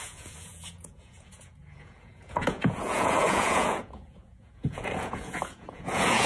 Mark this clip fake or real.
fake